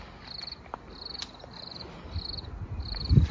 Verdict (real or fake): real